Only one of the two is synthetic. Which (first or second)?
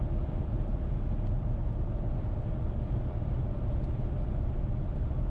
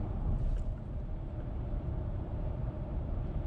second